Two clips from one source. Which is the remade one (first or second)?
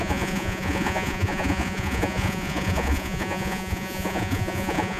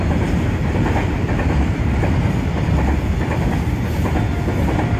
first